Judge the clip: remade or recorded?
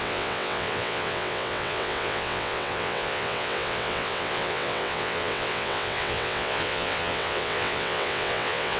remade